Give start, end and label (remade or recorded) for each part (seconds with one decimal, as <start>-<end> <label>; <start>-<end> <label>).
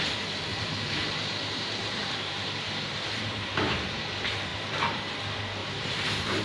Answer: 0.0-0.5 recorded; 0.5-3.9 remade; 3.9-4.5 recorded; 4.5-5.1 remade; 5.1-5.6 recorded; 5.6-6.4 remade